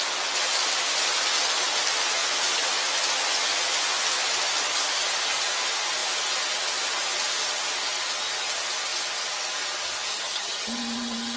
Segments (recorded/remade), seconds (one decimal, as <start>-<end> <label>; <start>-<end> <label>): 0.0-10.1 recorded; 10.1-11.4 remade